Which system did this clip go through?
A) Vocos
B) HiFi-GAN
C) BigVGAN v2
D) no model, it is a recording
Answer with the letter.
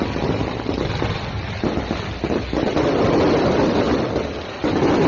D